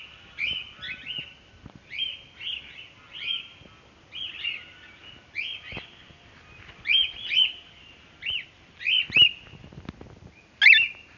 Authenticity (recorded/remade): recorded